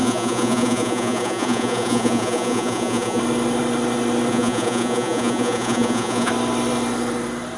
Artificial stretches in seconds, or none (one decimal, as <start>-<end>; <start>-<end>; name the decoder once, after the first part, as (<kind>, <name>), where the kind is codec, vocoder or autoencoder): 0.0-3.2 (vocoder, Vocos); 4.3-6.3